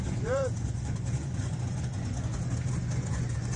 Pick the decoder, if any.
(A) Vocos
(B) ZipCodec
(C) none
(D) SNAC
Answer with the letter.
A